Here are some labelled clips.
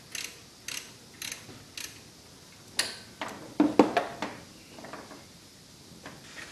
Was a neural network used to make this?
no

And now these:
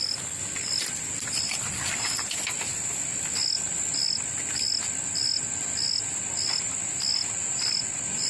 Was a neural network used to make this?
no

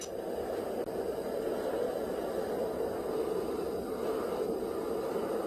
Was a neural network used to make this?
no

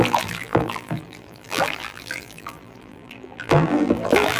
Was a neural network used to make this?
yes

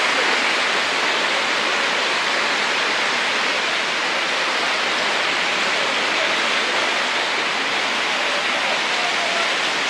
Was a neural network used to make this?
no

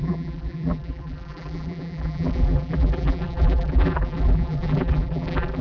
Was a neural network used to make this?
yes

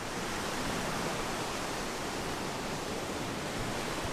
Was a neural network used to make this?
no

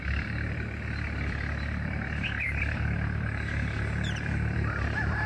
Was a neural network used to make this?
yes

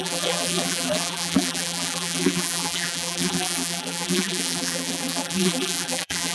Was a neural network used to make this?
yes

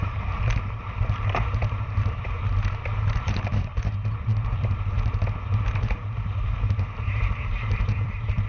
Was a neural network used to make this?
yes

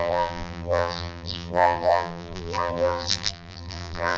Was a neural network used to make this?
yes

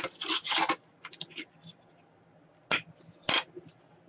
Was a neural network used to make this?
no